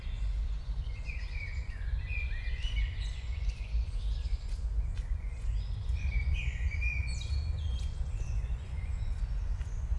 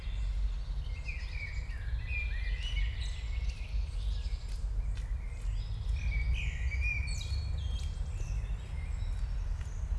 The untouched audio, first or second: second